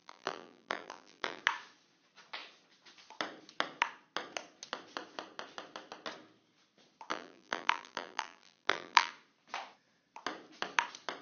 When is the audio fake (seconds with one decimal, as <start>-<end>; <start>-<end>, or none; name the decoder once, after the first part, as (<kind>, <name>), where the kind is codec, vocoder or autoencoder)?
0.0-1.4 (vocoder, BigVGAN v2); 7.1-9.1